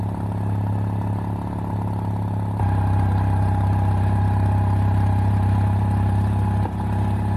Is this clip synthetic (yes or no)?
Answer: no